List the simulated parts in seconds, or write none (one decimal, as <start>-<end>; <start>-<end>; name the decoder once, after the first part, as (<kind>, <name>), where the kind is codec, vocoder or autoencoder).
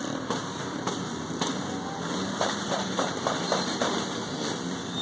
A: 2.2-4.3 (vocoder, BigVGAN v2)